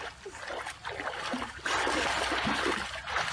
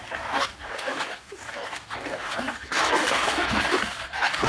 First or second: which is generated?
second